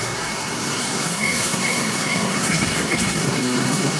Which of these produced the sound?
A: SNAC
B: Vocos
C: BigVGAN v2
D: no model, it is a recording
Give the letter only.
A